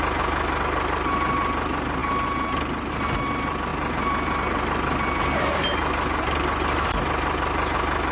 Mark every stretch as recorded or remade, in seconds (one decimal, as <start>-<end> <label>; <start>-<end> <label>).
0.0-8.1 recorded